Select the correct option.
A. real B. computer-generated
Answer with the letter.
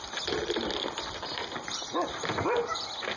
A